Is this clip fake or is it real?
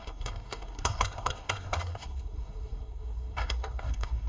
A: fake